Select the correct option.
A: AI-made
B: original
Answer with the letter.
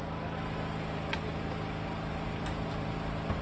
B